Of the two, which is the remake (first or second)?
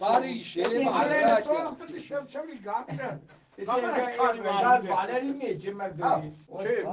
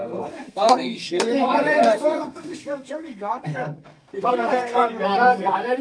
second